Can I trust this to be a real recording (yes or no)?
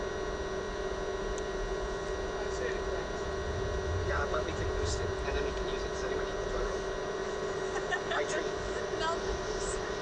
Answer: yes